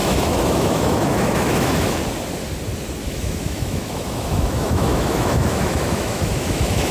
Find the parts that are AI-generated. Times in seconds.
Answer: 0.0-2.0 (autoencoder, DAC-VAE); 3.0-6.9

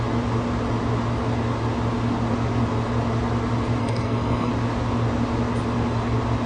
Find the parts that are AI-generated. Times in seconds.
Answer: 3.8-4.5 (codec, SNAC)